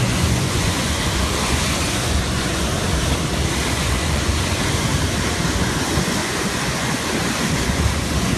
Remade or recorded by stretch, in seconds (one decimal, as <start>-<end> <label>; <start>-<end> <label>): 0.0-2.7 remade; 2.7-3.7 recorded; 3.7-4.9 remade; 4.9-5.6 recorded; 5.6-8.4 remade